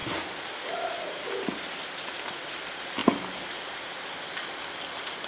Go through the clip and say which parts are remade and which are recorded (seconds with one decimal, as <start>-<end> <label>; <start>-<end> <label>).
0.0-5.3 recorded